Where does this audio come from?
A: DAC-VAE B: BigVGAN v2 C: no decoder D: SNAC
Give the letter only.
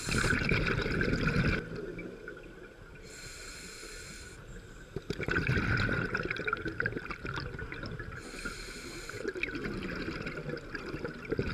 C